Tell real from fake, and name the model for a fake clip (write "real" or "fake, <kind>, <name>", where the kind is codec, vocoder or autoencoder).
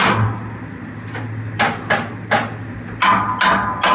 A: real